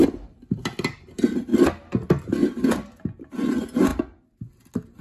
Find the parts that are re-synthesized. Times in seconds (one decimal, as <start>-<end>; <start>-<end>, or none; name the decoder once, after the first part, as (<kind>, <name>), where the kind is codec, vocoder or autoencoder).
0.0-0.6 (vocoder, BigVGAN v2); 3.9-4.5